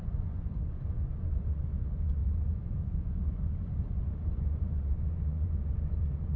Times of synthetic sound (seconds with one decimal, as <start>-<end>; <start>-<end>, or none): 0.0-6.4